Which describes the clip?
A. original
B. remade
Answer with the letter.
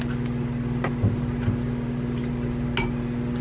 A